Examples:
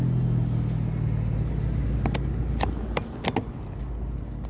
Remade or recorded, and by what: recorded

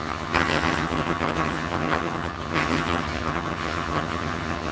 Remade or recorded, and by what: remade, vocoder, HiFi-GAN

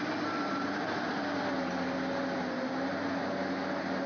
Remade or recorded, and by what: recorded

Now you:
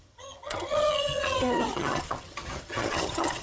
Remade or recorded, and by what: remade, vocoder, HiFi-GAN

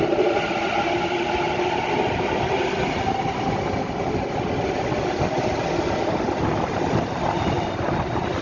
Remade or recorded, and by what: recorded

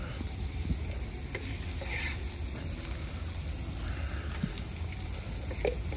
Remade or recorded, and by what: recorded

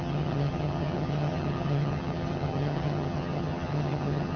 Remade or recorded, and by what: remade, vocoder, HiFi-GAN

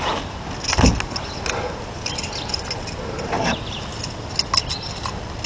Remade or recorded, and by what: recorded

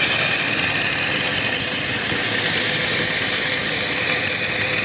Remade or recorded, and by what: recorded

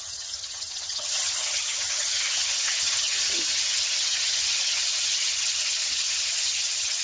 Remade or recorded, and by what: remade, vocoder, HiFi-GAN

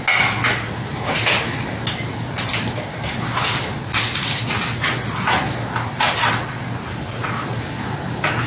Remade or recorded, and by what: recorded